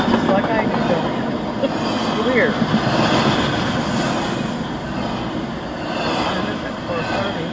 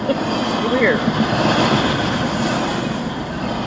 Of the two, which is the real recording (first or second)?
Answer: first